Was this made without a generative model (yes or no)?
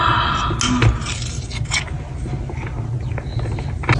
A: yes